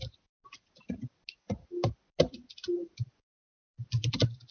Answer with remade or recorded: recorded